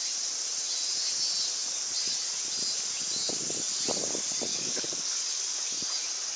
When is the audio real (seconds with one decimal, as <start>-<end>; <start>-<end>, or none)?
0.0-4.5; 5.4-6.4